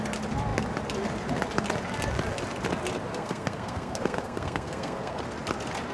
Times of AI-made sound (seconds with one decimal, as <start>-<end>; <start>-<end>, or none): 3.1-5.2